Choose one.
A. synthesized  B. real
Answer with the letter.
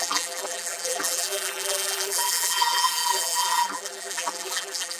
A